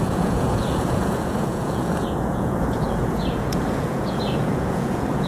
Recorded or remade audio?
remade